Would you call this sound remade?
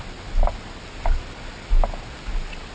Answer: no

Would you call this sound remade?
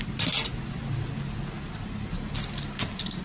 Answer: no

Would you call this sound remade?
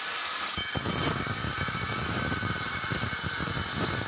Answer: no